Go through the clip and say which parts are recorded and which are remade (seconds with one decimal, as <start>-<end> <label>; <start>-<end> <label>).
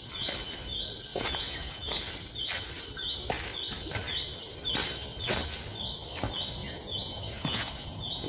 0.0-1.1 recorded; 1.1-2.0 remade; 2.0-6.6 recorded; 6.6-8.3 remade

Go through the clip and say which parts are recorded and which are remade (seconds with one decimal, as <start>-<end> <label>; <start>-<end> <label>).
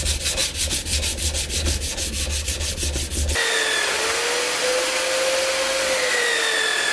0.0-6.9 recorded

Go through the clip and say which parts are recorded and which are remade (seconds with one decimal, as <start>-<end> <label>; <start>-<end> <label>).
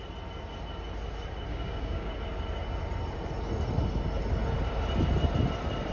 0.0-1.5 recorded; 1.5-2.1 remade; 2.1-5.9 recorded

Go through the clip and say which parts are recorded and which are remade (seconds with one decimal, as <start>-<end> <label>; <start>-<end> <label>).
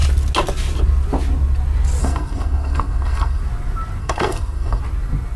0.0-2.0 recorded; 2.0-3.4 remade; 3.4-4.0 recorded; 4.0-4.8 remade; 4.8-5.4 recorded